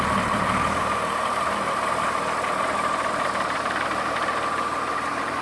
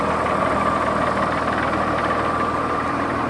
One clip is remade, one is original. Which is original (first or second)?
second